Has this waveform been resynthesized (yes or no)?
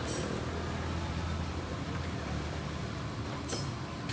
no